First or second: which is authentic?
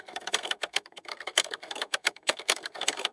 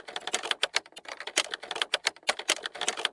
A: second